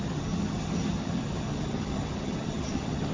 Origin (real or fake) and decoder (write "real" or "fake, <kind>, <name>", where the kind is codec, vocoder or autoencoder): fake, vocoder, HiFi-GAN